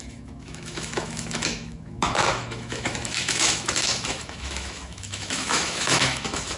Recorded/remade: remade